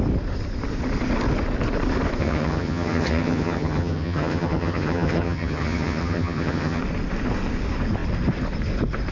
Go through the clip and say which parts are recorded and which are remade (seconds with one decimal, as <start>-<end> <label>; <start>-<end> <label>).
0.0-2.2 recorded; 2.2-6.8 remade; 6.8-9.1 recorded